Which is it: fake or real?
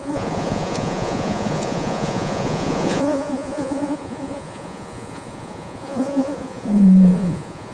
fake